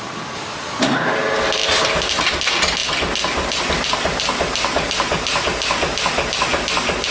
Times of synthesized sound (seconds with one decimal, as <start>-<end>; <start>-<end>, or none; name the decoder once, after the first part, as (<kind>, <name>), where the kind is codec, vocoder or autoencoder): 1.6-2.4 (vocoder, BigVGAN v2)